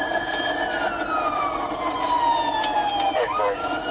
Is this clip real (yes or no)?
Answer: yes